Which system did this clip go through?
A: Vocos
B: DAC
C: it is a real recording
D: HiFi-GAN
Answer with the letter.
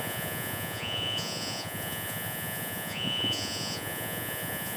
A